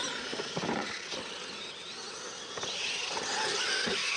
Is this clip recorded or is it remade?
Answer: recorded